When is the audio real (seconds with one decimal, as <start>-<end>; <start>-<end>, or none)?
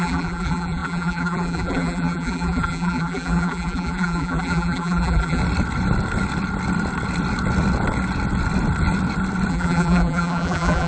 5.4-9.5